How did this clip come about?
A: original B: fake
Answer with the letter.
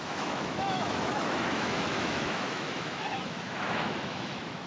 B